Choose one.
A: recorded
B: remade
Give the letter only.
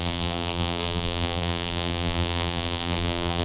B